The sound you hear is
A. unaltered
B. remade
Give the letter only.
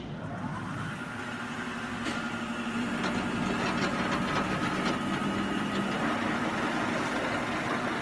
A